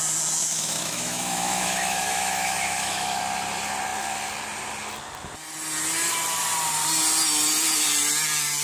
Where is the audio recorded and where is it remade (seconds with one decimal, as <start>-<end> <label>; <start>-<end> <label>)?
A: 0.0-0.4 recorded; 0.4-3.2 remade; 3.2-8.6 recorded